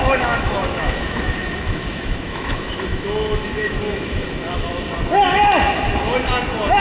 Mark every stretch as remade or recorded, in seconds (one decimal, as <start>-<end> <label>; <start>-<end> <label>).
0.0-4.7 remade; 4.7-6.8 recorded